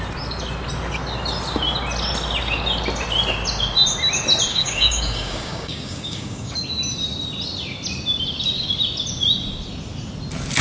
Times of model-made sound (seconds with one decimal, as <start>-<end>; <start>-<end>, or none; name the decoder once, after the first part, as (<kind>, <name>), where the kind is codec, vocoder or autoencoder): 4.5-6.5 (codec, DAC)